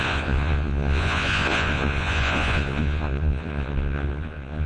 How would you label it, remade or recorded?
remade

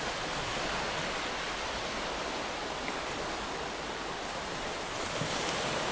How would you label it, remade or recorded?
recorded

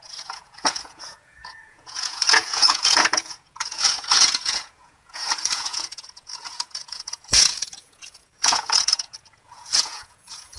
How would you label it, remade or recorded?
remade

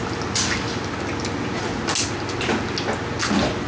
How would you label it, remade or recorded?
recorded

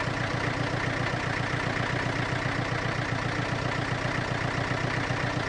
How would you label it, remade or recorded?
recorded